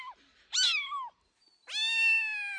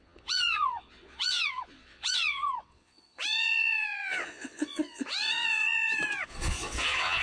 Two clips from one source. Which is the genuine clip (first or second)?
first